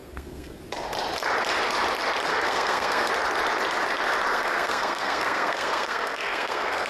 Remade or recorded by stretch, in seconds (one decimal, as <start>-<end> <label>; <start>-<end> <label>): 0.0-0.6 remade; 0.6-2.3 recorded; 2.3-3.1 remade; 3.1-4.3 recorded; 4.3-6.9 remade